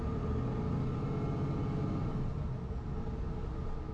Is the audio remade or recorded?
recorded